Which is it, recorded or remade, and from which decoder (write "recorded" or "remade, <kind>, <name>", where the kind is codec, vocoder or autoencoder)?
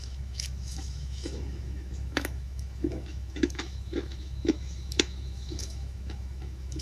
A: remade, autoencoder, DAC-VAE